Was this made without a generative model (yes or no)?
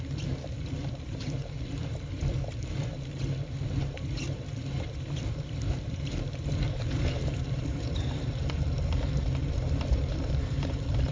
no